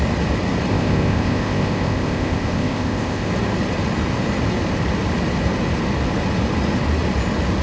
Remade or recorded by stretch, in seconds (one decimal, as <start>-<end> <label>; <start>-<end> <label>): 0.0-0.7 recorded; 0.7-3.3 remade; 3.3-7.6 recorded

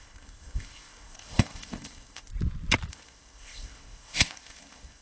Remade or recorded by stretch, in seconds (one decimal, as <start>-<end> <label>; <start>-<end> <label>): 0.0-2.3 remade; 2.3-2.9 recorded; 2.9-5.0 remade

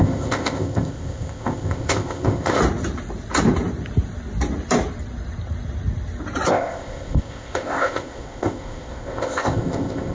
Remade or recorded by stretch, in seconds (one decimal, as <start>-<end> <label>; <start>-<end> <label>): 0.0-2.6 remade; 2.6-6.5 recorded; 6.5-10.1 remade

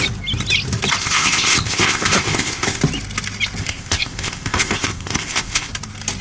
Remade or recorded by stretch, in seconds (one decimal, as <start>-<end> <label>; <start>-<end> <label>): 0.0-1.0 recorded; 1.0-2.8 remade; 2.8-3.6 recorded; 3.6-5.7 remade; 5.7-6.2 recorded

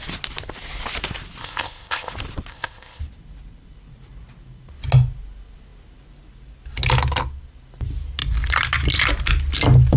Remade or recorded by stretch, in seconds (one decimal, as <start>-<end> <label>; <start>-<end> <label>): 0.0-1.4 recorded; 1.4-2.1 remade; 2.1-2.5 recorded; 2.5-3.0 remade; 3.0-10.0 recorded